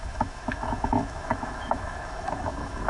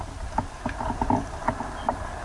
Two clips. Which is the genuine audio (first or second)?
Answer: second